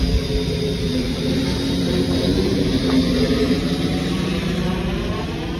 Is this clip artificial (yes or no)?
yes